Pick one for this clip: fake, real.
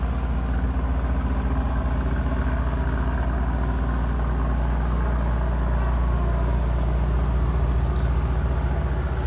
real